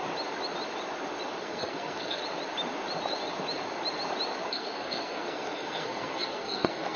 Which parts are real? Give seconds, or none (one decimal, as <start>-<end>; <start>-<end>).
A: 0.0-1.4; 2.2-4.5